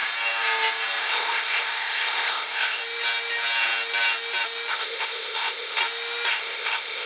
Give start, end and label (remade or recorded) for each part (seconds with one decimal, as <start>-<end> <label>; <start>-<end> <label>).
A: 0.0-1.0 recorded; 1.0-2.8 remade; 2.8-4.7 recorded; 4.7-5.8 remade; 5.8-6.3 recorded; 6.3-7.1 remade

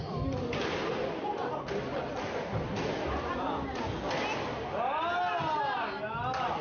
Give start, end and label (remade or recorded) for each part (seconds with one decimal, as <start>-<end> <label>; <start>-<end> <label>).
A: 0.0-6.6 recorded